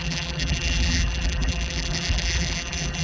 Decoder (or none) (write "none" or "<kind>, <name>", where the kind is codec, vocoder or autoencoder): vocoder, BigVGAN v2